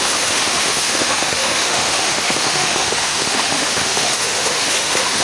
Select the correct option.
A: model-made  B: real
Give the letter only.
A